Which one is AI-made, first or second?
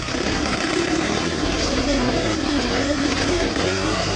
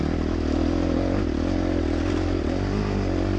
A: first